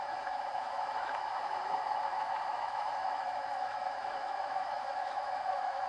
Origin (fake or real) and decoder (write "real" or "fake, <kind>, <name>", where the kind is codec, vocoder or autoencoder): fake, autoencoder, DAC-VAE